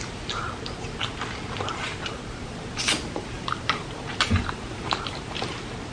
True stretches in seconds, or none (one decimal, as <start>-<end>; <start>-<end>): 0.0-1.9; 5.4-5.9